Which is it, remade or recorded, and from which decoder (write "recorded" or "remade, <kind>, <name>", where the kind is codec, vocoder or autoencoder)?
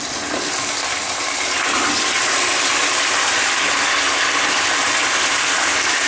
recorded